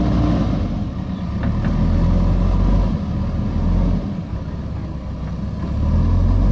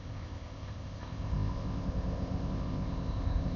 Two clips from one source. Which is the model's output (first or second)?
second